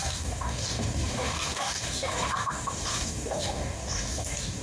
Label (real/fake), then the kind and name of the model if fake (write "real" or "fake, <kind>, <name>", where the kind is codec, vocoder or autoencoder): fake, codec, DAC